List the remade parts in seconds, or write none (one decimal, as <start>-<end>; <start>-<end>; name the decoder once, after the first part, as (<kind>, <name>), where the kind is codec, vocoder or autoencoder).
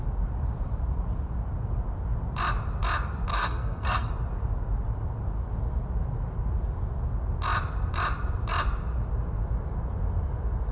3.3-4.1 (codec, SNAC)